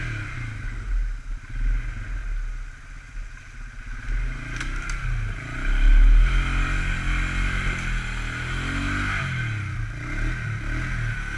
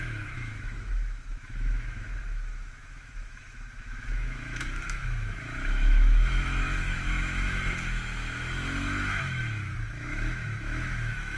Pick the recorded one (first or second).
first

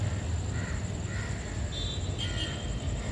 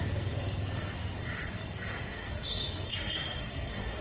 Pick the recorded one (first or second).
first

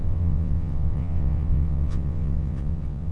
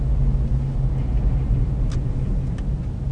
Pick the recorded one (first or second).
second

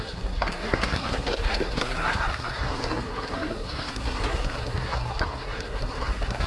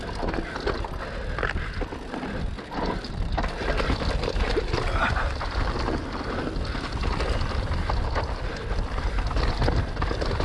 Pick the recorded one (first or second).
second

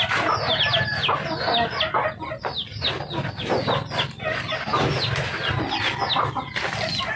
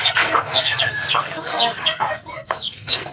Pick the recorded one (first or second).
first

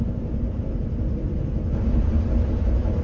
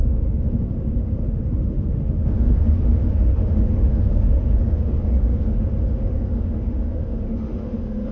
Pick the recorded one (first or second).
first